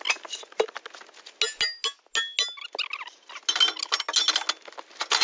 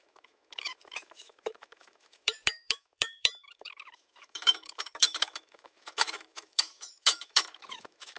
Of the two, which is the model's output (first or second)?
second